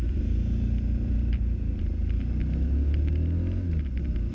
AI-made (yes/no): no